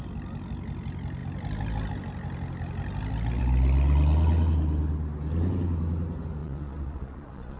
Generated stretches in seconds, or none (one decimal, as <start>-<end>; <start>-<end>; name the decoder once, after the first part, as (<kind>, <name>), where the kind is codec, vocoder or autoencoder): 6.4-7.6 (vocoder, Vocos)